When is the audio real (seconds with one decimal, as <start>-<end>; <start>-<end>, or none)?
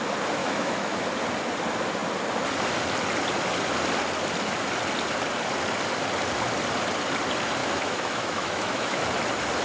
0.0-0.4; 1.1-7.6; 9.0-9.6